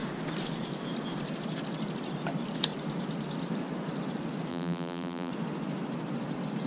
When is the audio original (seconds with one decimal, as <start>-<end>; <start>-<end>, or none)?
0.0-4.5; 5.3-6.7